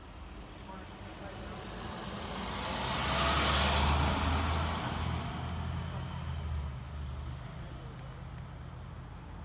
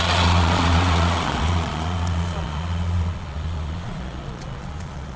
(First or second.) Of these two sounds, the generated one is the second